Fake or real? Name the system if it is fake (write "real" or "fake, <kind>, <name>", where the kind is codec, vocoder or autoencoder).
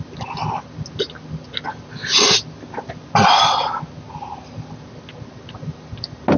real